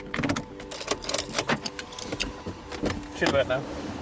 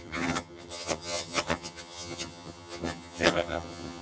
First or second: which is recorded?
first